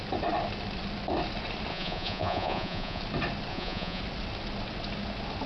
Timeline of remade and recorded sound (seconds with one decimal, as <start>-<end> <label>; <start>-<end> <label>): 0.0-1.7 recorded; 1.7-3.0 remade; 3.0-3.5 recorded; 3.5-4.0 remade; 4.0-5.5 recorded